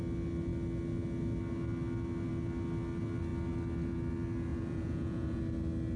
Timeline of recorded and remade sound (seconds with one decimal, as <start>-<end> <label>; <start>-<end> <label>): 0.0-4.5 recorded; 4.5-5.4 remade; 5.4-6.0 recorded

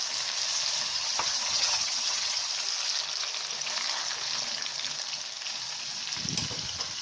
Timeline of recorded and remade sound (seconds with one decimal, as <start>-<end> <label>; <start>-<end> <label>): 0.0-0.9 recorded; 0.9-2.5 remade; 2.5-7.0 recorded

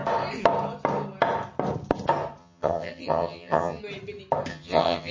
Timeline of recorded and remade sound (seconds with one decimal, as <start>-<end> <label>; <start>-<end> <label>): 0.0-2.4 recorded; 2.4-3.8 remade; 3.8-4.5 recorded; 4.5-5.1 remade

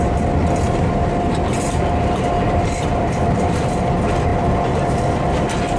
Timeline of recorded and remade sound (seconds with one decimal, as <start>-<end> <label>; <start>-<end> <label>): 0.0-0.4 recorded; 0.4-3.9 remade; 3.9-5.8 recorded

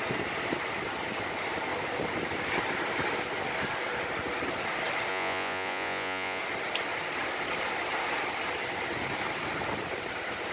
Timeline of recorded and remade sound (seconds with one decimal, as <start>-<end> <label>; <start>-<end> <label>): 0.0-5.1 recorded; 5.1-6.4 remade; 6.4-10.5 recorded

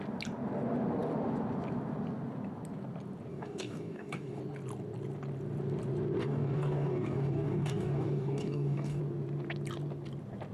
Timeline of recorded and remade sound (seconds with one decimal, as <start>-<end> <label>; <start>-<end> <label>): 0.0-3.3 recorded; 3.3-4.4 remade; 4.4-6.2 recorded; 6.2-9.0 remade; 9.0-10.5 recorded

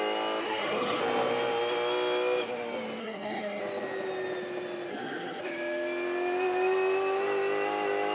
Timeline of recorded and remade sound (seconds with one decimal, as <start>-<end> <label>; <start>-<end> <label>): 0.0-0.4 recorded; 0.4-1.0 remade; 1.0-3.0 recorded; 3.0-3.6 remade; 3.6-4.9 recorded; 4.9-5.4 remade; 5.4-8.1 recorded